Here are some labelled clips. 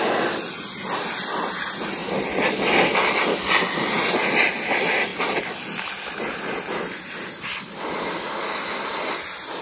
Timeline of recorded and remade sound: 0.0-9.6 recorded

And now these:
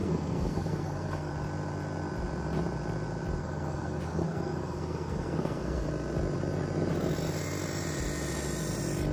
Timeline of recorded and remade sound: 0.0-1.3 remade; 1.3-3.4 recorded; 3.4-5.9 remade; 5.9-9.1 recorded

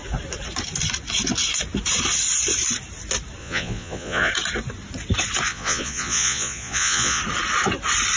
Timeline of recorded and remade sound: 0.0-3.4 recorded; 3.4-4.3 remade; 4.3-5.5 recorded; 5.5-7.2 remade; 7.2-8.2 recorded

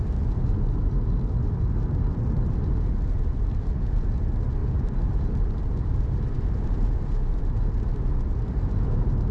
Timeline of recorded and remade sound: 0.0-4.6 recorded; 4.6-7.4 remade; 7.4-9.3 recorded

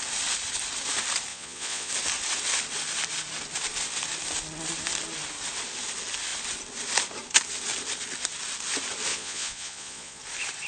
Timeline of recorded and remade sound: 0.0-1.3 recorded; 1.3-1.9 remade; 1.9-9.1 recorded; 9.1-10.2 remade; 10.2-10.7 recorded

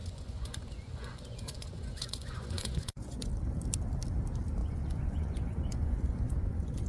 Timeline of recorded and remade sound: 0.0-3.3 remade; 3.3-4.6 recorded; 4.6-6.9 remade

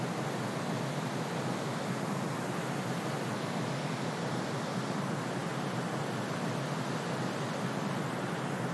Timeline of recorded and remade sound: 0.0-8.7 recorded

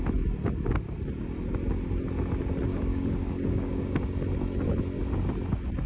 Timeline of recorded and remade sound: 0.0-2.7 recorded; 2.7-4.0 remade; 4.0-5.9 recorded